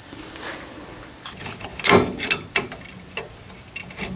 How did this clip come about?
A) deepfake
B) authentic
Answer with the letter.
B